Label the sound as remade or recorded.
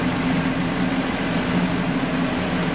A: recorded